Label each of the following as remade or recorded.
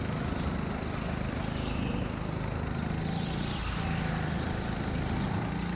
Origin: recorded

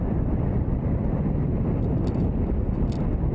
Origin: recorded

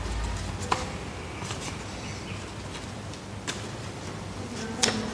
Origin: recorded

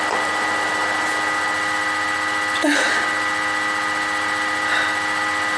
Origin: recorded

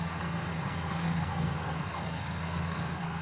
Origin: remade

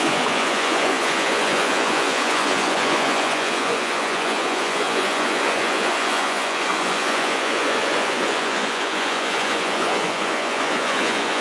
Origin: remade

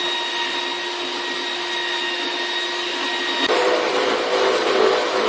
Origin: recorded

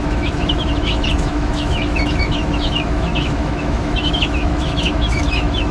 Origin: remade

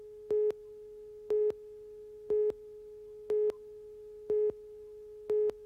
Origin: recorded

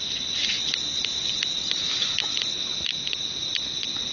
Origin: recorded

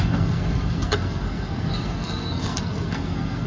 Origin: remade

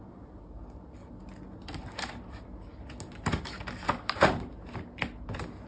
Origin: recorded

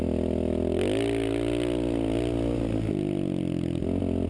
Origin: recorded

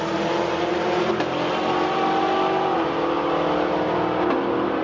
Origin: recorded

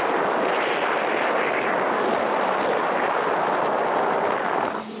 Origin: recorded